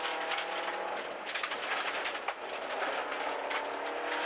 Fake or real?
real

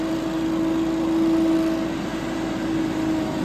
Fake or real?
real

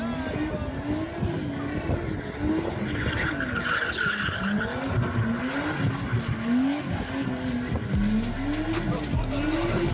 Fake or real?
real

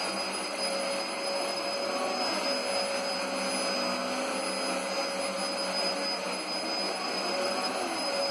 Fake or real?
real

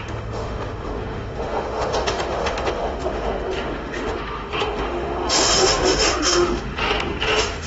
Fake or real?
fake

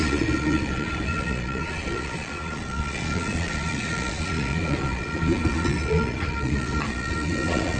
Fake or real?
fake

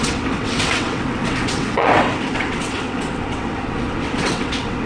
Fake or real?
fake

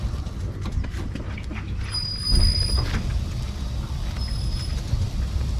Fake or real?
real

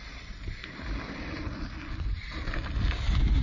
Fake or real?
real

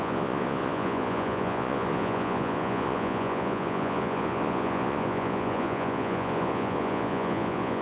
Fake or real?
fake